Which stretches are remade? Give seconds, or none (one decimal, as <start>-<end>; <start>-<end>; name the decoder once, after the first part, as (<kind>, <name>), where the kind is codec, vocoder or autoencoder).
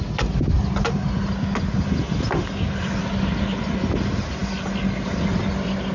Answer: none